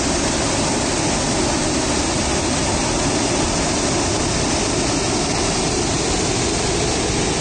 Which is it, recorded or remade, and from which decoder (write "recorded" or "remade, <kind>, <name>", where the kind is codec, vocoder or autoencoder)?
recorded